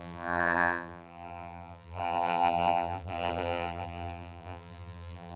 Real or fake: fake